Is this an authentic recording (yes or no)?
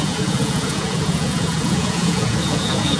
no